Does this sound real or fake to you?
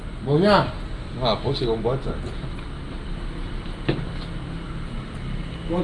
real